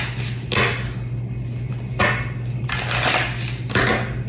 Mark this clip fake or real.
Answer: real